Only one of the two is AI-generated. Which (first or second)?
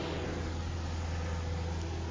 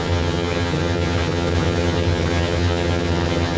second